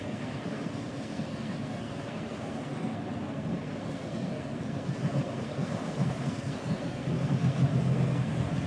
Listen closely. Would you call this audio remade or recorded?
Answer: remade